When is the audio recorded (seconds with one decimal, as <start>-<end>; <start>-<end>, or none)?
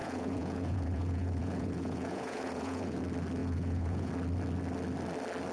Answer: 3.0-3.4; 4.1-5.5